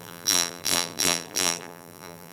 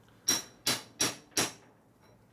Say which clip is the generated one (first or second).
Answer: first